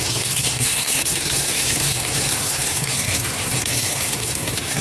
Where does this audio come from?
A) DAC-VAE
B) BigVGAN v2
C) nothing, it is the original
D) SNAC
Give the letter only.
D